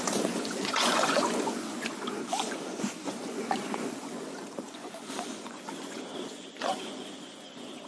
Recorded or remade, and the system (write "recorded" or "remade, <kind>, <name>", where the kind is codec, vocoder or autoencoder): remade, vocoder, Vocos